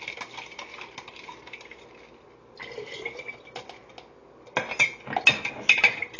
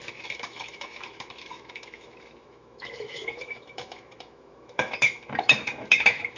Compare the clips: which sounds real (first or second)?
first